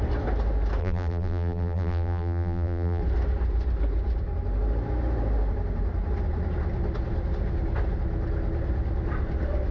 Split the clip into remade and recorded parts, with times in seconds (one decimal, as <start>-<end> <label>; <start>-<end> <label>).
0.0-0.8 recorded; 0.8-3.0 remade; 3.0-9.7 recorded